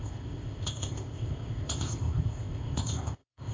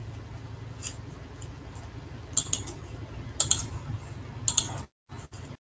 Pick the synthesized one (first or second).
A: first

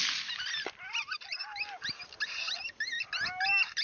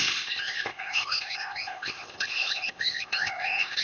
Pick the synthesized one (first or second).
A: second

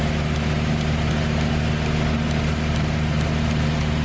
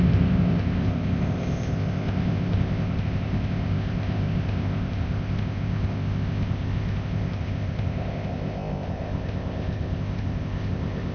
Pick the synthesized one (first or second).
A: second